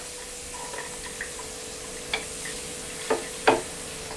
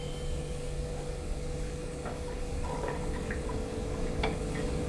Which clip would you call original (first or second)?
first